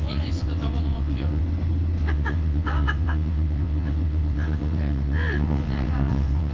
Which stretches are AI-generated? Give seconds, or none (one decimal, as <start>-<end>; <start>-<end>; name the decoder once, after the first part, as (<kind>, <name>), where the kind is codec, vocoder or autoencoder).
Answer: 0.0-1.4 (vocoder, WaveNeXt); 2.0-6.5